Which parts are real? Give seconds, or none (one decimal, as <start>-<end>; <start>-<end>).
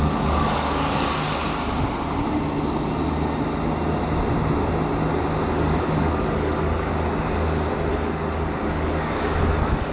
1.4-5.5; 6.9-7.9